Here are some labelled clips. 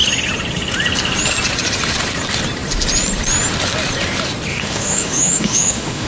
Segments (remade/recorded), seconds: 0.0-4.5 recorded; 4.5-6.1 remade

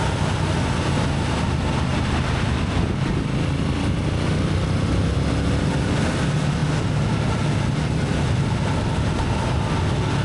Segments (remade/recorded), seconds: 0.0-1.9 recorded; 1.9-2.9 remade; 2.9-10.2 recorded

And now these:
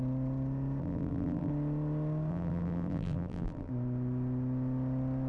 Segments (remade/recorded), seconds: 0.0-0.8 recorded; 0.8-1.5 remade; 1.5-2.3 recorded; 2.3-3.7 remade; 3.7-5.3 recorded

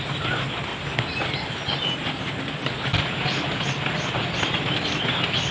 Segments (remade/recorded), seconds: 0.0-5.5 recorded

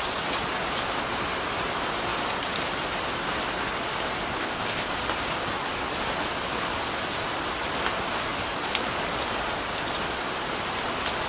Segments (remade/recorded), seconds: 0.0-4.3 recorded; 4.3-4.9 remade; 4.9-11.3 recorded

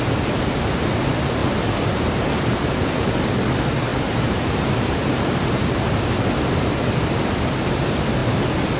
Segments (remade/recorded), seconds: 0.0-1.4 recorded; 1.4-3.2 remade; 3.2-3.9 recorded; 3.9-6.0 remade; 6.0-8.8 recorded